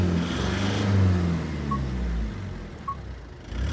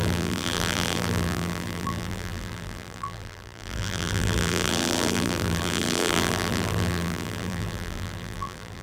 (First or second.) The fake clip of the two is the second